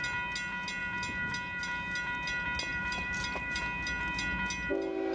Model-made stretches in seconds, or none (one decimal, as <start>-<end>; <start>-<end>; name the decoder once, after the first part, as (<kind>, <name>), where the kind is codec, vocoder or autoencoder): 2.7-3.6 (vocoder, BigVGAN v2)